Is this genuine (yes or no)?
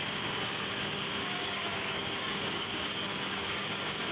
no